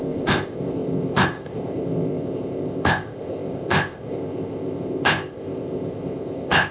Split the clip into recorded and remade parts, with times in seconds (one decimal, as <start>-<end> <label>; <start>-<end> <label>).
0.0-6.7 remade

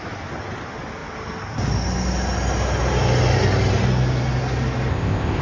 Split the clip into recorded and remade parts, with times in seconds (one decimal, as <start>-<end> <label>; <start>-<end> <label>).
0.0-4.9 recorded; 4.9-5.4 remade

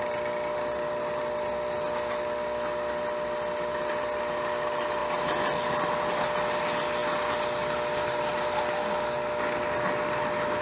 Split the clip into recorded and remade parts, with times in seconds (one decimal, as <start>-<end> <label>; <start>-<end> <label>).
0.0-10.6 recorded

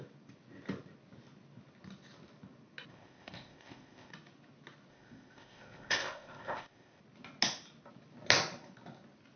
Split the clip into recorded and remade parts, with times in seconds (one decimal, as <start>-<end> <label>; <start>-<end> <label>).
0.0-2.9 recorded; 2.9-4.1 remade; 4.1-4.9 recorded; 4.9-7.0 remade; 7.0-9.4 recorded

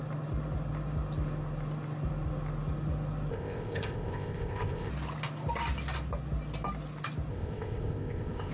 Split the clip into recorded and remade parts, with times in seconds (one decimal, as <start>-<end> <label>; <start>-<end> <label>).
0.0-3.3 recorded; 3.3-4.9 remade; 4.9-7.3 recorded; 7.3-8.5 remade

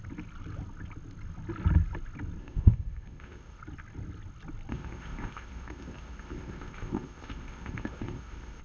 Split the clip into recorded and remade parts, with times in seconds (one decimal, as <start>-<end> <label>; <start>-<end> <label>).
0.0-2.4 recorded; 2.4-3.6 remade; 3.6-4.7 recorded; 4.7-8.6 remade

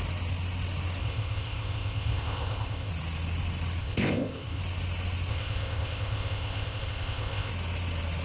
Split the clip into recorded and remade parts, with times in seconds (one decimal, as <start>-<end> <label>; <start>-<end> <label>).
0.0-1.0 recorded; 1.0-2.9 remade; 2.9-3.8 recorded; 3.8-4.6 remade; 4.6-5.3 recorded; 5.3-7.5 remade; 7.5-8.2 recorded